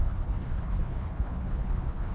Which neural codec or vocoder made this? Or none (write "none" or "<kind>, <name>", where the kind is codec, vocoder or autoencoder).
codec, HILCodec